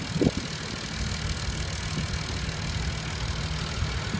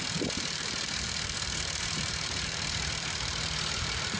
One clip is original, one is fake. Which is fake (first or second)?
second